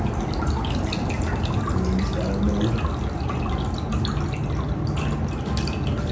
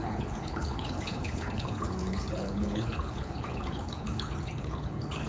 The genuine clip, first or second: first